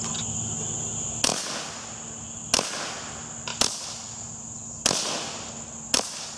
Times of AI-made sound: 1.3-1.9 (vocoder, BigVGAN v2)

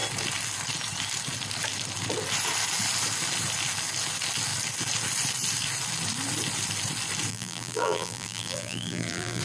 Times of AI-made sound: 7.3-9.4 (vocoder, BigVGAN v2)